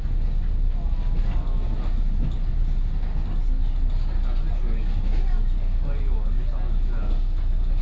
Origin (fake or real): real